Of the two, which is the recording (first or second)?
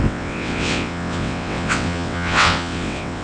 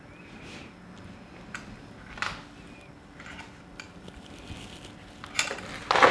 second